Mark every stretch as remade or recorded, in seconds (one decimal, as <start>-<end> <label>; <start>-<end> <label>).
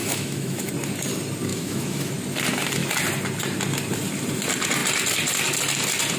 0.0-0.7 remade; 0.7-1.5 recorded; 1.5-2.1 remade; 2.1-6.2 recorded